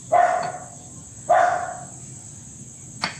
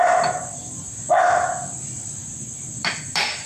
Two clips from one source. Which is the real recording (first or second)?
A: first